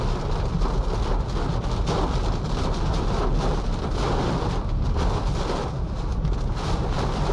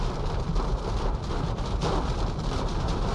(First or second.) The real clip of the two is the first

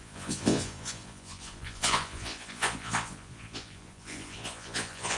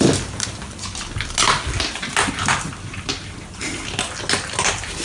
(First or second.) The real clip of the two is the second